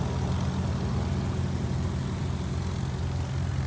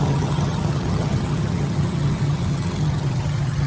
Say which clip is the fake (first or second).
second